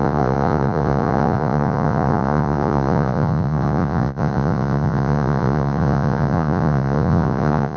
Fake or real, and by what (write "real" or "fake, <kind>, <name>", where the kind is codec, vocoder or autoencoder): fake, vocoder, Vocos